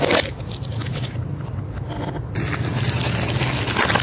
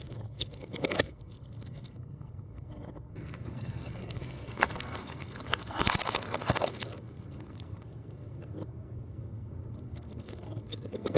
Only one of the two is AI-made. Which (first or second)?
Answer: second